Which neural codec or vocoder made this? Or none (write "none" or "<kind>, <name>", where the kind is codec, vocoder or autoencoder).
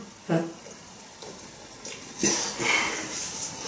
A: none